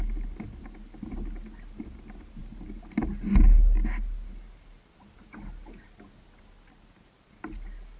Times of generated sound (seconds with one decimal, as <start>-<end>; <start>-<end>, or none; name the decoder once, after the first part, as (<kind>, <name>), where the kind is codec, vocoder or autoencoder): none